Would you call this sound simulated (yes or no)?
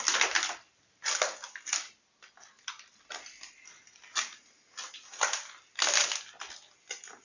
no